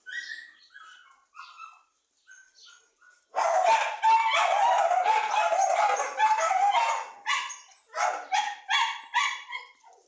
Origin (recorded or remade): recorded